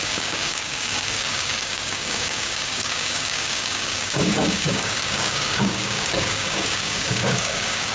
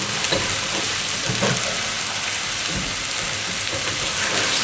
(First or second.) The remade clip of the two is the first